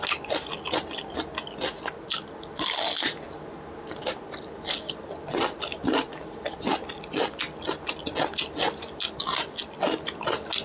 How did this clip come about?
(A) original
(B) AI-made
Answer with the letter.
A